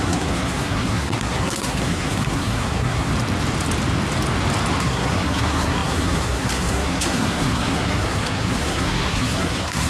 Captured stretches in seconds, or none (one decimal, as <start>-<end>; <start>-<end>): 3.1-4.8